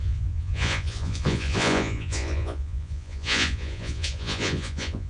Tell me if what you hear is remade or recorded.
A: remade